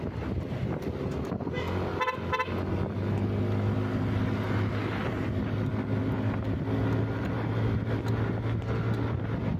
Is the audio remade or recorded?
recorded